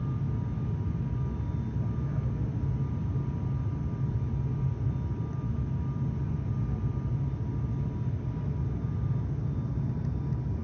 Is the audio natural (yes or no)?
yes